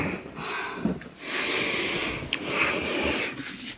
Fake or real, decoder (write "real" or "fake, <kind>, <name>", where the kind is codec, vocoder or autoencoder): real